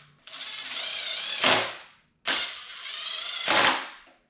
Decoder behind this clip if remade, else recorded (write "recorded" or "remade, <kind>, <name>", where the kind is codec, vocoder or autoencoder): recorded